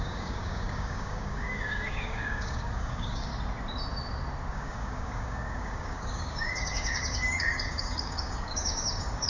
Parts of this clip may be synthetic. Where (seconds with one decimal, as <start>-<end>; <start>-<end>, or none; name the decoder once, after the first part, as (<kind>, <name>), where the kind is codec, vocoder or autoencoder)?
0.0-3.3 (codec, DAC); 4.5-9.3